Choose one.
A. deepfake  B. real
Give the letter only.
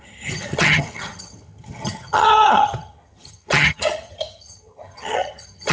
A